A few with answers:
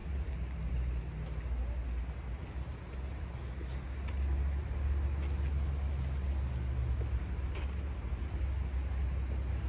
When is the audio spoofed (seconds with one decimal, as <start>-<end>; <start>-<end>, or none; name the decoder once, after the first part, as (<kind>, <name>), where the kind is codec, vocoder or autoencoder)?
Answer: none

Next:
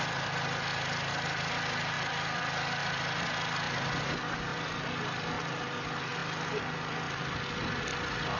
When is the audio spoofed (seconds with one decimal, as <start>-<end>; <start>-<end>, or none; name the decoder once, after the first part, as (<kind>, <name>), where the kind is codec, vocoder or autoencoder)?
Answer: none

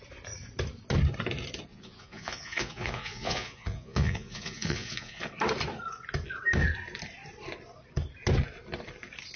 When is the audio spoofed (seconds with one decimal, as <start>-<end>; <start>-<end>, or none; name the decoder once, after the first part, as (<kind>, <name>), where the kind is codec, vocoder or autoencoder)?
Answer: 1.7-5.2 (vocoder, Vocos)